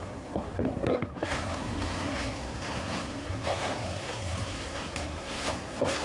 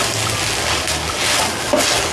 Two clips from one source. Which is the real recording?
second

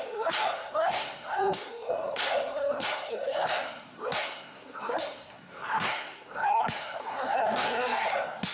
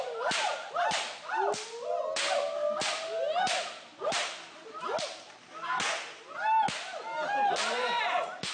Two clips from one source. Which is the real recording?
second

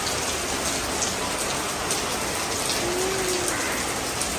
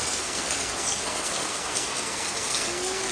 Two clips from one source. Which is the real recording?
first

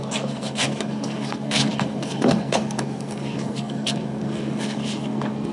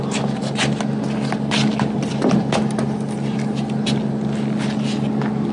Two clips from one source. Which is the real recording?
second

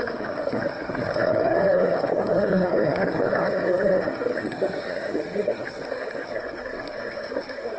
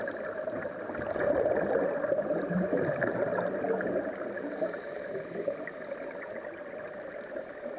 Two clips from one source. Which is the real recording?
second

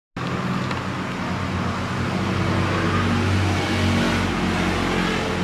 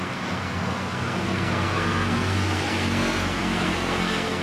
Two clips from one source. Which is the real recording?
first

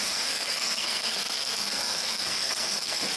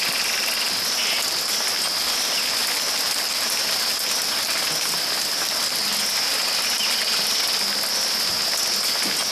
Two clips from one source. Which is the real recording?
second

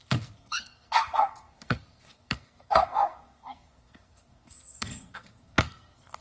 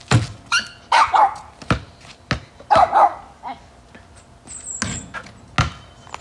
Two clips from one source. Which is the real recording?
second